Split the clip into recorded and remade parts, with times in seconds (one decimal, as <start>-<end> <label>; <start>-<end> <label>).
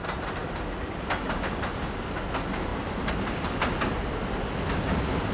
0.0-5.3 recorded